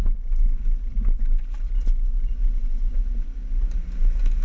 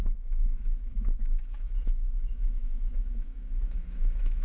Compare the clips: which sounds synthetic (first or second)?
second